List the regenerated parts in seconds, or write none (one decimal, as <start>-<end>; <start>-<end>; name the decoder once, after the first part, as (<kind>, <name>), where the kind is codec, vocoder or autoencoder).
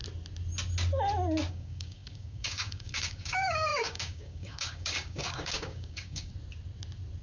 1.5-6.3 (codec, DAC)